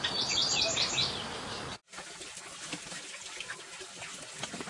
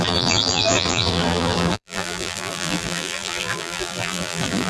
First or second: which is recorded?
first